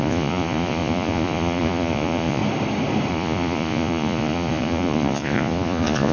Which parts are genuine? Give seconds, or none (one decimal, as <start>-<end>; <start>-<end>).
2.4-3.1